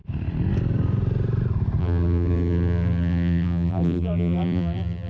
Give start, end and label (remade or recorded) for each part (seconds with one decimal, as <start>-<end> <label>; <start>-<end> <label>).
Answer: 0.0-1.8 recorded; 1.8-5.1 remade